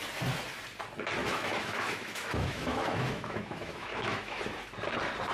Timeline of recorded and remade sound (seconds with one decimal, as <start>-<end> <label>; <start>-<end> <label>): 0.0-1.2 recorded; 1.2-4.4 remade; 4.4-5.3 recorded